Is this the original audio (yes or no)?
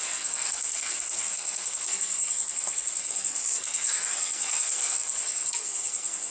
no